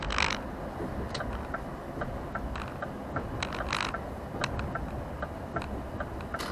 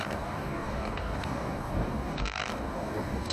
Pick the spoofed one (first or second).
second